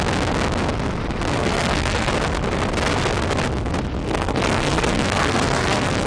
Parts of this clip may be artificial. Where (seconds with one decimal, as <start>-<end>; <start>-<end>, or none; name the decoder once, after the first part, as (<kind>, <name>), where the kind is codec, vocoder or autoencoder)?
1.4-2.1 (codec, SNAC); 4.0-6.1